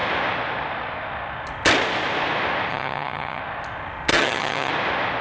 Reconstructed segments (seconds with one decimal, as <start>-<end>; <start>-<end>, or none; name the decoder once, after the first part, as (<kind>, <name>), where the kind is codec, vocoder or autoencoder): 2.7-3.4 (vocoder, HiFi-GAN); 4.1-4.7